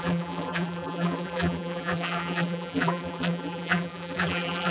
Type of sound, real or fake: fake